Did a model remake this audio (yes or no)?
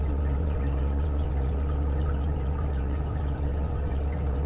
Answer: yes